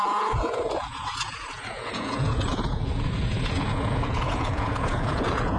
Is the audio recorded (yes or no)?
no